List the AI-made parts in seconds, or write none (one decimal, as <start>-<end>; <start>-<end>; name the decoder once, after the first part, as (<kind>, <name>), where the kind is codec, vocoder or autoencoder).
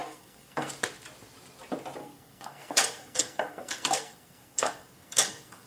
0.0-0.7 (codec, SNAC); 2.0-5.7